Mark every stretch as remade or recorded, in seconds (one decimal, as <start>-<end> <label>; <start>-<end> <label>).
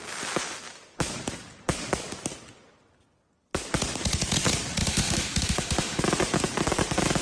0.0-4.8 recorded; 4.8-6.0 remade; 6.0-7.2 recorded